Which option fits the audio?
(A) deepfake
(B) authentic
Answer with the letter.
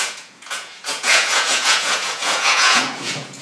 A